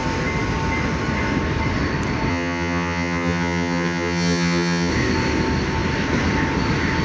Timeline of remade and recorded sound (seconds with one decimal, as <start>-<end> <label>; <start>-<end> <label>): 0.0-2.3 recorded; 2.3-4.9 remade; 4.9-7.0 recorded